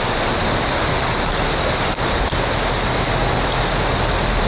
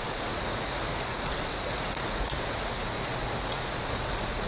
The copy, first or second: second